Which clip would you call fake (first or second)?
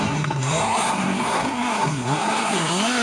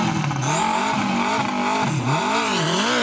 first